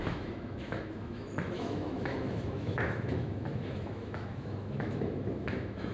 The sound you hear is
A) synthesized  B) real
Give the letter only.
A